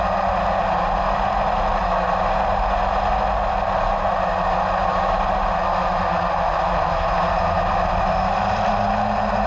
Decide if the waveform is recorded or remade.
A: recorded